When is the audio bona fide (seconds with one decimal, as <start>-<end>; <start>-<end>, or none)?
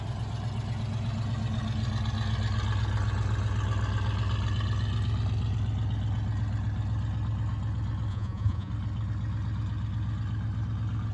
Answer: 0.0-8.1; 8.7-11.1